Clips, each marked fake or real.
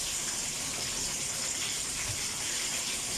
fake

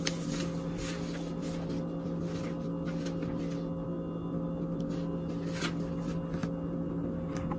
real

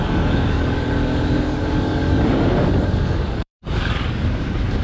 fake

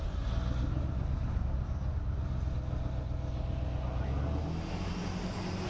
real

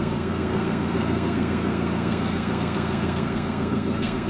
fake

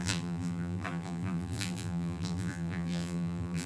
fake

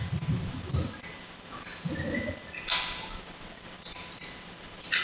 fake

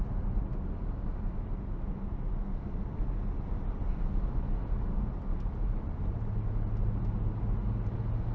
real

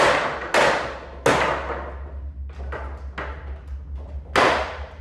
real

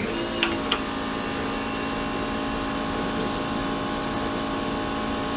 real